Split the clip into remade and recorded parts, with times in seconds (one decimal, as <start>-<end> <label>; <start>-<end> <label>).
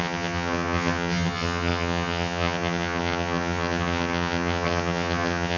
0.0-5.6 remade